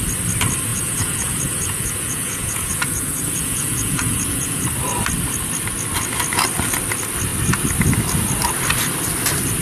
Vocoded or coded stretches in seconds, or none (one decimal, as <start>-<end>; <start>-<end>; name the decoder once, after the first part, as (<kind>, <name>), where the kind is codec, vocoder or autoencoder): 0.7-4.6 (vocoder, Vocos)